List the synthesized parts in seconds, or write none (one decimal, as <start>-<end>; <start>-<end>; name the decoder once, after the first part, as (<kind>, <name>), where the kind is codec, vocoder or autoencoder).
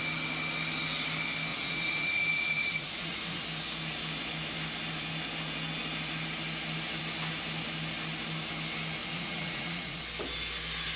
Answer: 1.5-3.4 (vocoder, Vocos); 9.0-10.0